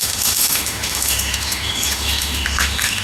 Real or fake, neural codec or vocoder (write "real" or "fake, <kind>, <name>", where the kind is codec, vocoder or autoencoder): fake, autoencoder, DAC-VAE